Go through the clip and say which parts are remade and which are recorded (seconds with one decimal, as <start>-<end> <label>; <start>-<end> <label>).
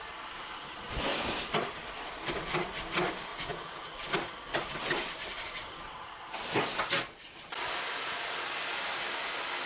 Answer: 0.0-3.3 recorded; 3.3-3.9 remade; 3.9-9.7 recorded